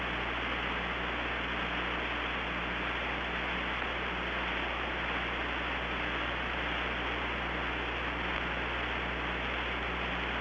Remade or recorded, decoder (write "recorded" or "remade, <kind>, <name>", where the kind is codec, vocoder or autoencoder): recorded